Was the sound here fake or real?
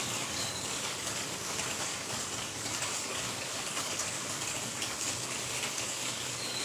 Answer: fake